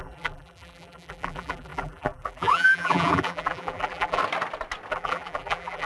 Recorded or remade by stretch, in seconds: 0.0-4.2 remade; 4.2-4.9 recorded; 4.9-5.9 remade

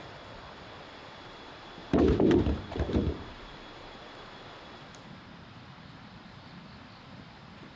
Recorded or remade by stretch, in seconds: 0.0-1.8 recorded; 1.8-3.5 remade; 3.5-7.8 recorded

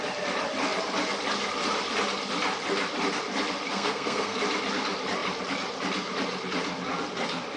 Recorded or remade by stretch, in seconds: 0.0-3.7 recorded; 3.7-4.4 remade; 4.4-7.6 recorded